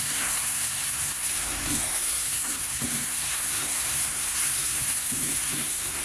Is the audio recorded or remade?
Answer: remade